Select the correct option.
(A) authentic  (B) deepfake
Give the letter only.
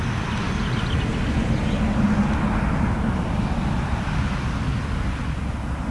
A